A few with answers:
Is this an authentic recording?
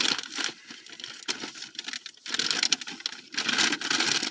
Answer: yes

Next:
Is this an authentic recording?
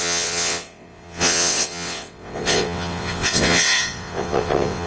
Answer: no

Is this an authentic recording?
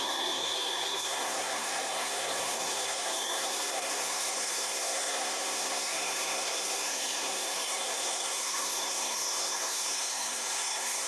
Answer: no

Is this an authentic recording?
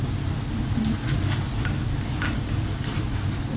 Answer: yes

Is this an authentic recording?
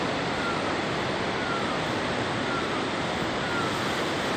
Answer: yes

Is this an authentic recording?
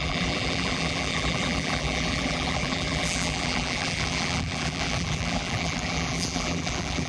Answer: no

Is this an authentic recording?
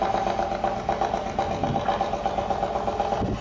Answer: yes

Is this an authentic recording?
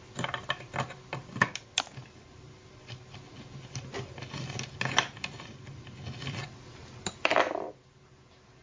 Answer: yes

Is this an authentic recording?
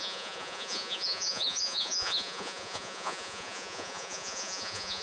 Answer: no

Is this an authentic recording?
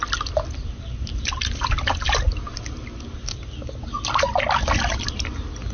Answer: yes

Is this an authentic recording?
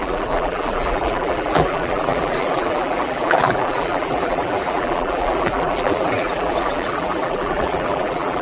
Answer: no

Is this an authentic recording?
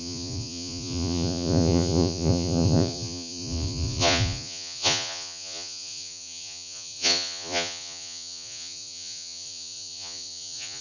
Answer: no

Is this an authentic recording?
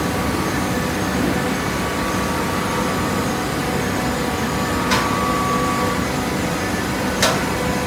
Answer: yes